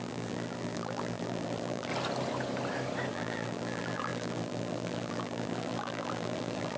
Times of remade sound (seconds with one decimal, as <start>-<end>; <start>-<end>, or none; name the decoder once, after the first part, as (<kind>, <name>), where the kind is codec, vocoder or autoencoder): 0.0-1.9 (vocoder, BigVGAN v2); 3.1-6.8